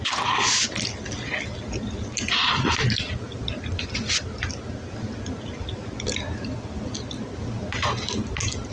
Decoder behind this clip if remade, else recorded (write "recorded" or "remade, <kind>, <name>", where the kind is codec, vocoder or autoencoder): recorded